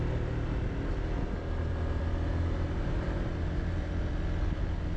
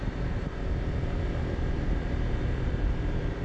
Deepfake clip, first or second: second